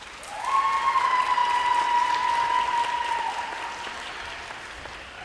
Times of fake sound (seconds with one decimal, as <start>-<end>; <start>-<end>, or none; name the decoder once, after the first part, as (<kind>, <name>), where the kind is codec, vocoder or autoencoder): none

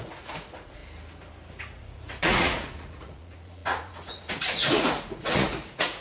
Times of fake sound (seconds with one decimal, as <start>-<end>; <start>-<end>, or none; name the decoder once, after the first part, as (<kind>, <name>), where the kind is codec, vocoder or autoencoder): 0.0-0.8 (vocoder, Vocos); 1.5-6.0

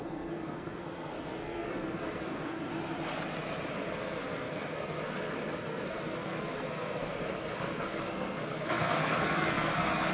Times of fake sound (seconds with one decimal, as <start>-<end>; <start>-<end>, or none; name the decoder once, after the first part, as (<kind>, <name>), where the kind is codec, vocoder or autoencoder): 0.0-2.7 (codec, SNAC); 3.7-10.1

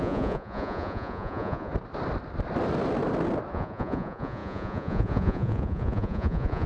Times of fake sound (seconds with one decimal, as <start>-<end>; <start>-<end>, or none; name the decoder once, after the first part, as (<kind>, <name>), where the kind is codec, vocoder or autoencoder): 0.0-1.7 (vocoder, Vocos); 3.5-6.7

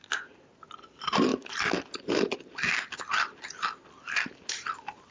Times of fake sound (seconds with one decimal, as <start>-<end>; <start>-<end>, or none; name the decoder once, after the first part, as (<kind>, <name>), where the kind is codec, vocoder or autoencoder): none

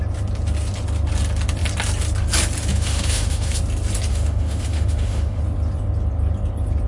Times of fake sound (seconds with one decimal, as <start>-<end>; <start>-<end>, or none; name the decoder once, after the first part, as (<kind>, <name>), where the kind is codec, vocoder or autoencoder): 2.7-3.6 (autoencoder, DAC-VAE); 4.1-5.4